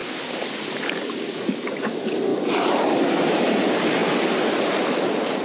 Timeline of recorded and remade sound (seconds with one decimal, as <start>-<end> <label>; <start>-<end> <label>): 0.0-5.4 recorded